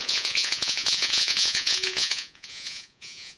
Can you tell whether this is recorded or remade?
remade